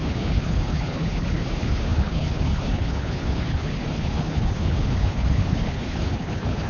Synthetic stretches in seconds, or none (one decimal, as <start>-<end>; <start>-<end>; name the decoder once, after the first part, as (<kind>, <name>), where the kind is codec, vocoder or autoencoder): 0.0-6.7 (codec, HILCodec)